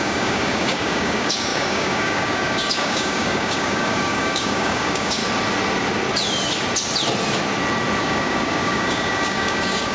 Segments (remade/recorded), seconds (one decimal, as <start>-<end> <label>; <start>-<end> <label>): 0.0-5.2 remade; 5.2-8.0 recorded; 8.0-9.9 remade